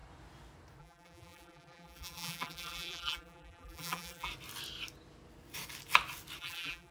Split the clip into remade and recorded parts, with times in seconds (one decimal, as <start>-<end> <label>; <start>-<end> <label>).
0.0-0.8 recorded; 0.8-4.3 remade; 4.3-6.4 recorded; 6.4-6.9 remade